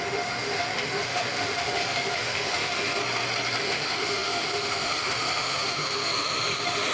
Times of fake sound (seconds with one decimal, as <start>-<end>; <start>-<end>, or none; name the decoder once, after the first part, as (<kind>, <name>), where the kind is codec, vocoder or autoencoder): 0.0-3.0 (autoencoder, DAC-VAE); 3.6-6.9